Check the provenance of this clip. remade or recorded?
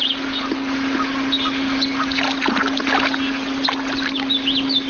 recorded